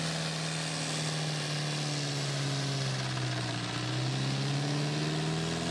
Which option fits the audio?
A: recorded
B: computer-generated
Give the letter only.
A